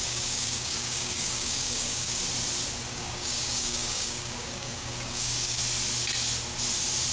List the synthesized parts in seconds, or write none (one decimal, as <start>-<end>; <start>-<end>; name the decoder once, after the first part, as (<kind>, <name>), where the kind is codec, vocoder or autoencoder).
0.0-2.2 (codec, DAC); 2.9-5.6